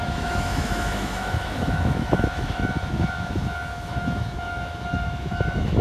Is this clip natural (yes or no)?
no